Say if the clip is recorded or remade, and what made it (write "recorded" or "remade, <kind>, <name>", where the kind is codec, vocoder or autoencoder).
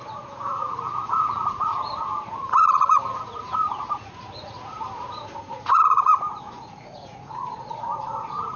remade, vocoder, Vocos